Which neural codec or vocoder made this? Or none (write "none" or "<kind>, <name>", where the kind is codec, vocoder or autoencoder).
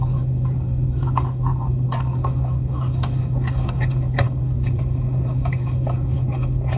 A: codec, DAC